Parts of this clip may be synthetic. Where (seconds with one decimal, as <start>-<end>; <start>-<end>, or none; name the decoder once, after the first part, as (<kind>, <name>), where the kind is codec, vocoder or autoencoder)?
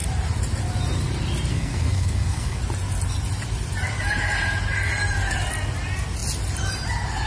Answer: 1.5-2.6 (codec, SNAC)